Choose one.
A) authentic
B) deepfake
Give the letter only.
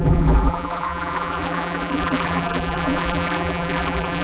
B